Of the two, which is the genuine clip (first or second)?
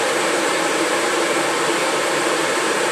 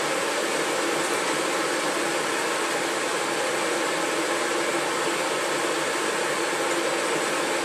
second